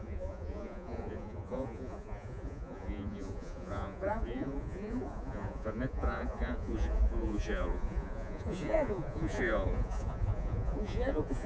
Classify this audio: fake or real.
fake